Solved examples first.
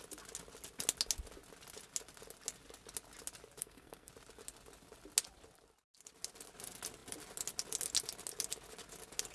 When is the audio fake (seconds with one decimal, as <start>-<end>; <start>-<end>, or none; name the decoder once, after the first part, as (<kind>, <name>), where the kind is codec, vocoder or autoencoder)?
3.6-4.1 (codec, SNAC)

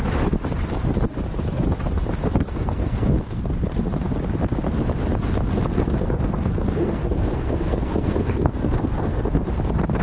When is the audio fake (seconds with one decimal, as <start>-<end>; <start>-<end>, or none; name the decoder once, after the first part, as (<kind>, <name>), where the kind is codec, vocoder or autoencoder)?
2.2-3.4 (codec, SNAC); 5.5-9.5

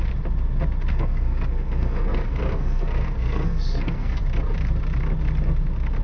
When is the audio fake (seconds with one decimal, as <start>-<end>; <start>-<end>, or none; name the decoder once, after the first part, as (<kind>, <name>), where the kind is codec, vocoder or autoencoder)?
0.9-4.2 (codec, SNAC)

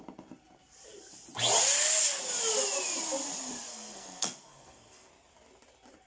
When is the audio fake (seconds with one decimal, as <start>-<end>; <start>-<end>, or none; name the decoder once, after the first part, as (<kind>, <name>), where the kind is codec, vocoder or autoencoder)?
3.7-5.1 (codec, SNAC)